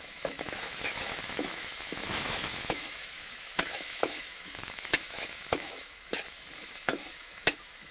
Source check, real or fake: fake